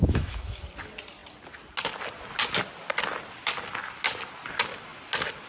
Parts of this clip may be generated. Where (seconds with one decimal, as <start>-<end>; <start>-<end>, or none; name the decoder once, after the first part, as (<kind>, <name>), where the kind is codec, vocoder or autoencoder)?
0.0-0.6 (autoencoder, DAC-VAE)

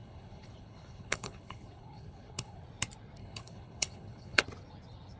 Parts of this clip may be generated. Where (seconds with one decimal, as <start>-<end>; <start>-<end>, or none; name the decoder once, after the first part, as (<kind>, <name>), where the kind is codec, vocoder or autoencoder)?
0.0-2.6 (codec, HILCodec); 3.2-4.4

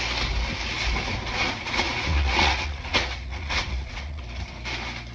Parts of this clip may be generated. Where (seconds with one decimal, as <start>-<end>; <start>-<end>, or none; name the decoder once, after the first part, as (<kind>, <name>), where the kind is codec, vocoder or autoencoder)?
1.3-4.2 (vocoder, Vocos)

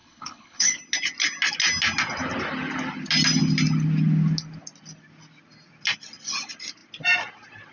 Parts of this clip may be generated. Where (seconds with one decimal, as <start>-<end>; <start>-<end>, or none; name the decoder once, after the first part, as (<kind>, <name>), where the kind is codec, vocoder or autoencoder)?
0.0-0.8 (codec, HILCodec)

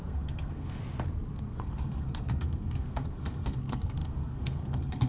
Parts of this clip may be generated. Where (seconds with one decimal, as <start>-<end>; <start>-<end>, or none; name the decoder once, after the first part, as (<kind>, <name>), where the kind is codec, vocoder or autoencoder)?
0.0-0.8 (codec, SNAC); 1.5-5.1

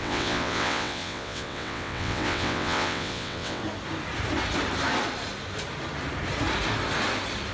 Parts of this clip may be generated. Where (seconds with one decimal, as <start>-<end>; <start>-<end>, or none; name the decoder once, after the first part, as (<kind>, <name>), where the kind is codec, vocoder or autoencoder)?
0.0-3.6 (vocoder, WaveNeXt)

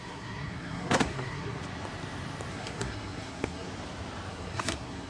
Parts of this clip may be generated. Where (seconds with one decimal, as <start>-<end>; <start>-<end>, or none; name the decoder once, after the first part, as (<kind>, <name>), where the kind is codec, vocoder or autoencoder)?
0.0-1.6 (codec, SNAC); 2.5-3.7; 4.3-5.1